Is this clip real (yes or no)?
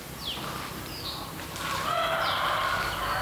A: yes